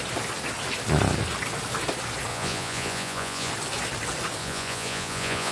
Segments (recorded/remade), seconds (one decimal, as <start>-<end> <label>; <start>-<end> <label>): 0.0-2.3 recorded; 2.3-3.5 remade; 3.5-4.4 recorded; 4.4-5.5 remade